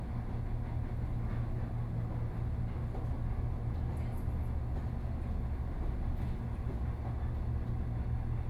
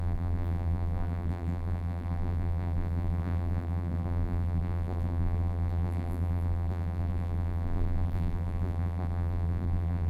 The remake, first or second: second